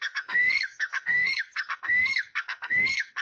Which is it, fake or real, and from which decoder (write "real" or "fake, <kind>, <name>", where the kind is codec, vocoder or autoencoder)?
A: fake, codec, SNAC